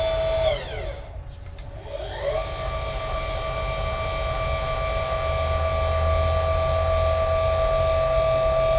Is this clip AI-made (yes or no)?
no